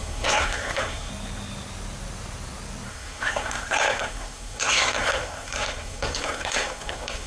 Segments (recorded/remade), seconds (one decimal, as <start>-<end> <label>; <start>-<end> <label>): 0.0-1.1 remade; 1.1-2.9 recorded; 2.9-7.3 remade